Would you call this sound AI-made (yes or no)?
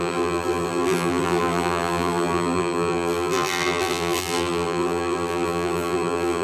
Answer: yes